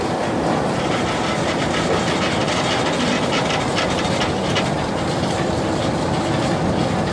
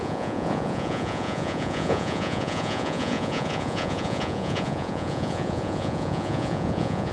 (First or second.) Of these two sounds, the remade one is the second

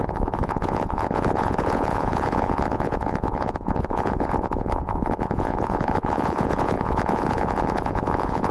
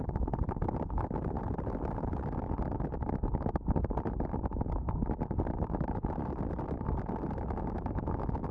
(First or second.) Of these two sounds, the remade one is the first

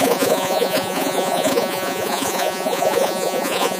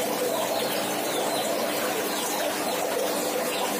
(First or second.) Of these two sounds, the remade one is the first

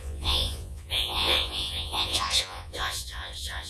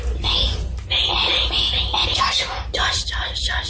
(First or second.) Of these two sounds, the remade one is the first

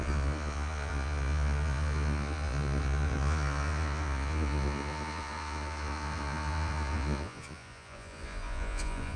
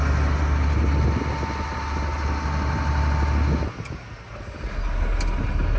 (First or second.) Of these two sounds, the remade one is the first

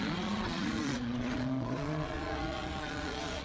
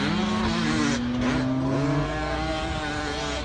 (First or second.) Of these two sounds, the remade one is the first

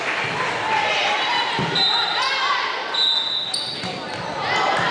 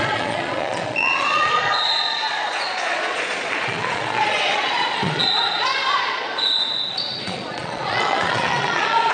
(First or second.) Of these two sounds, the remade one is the second